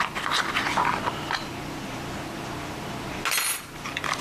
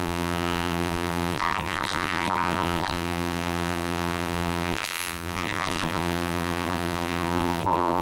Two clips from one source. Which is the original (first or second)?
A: first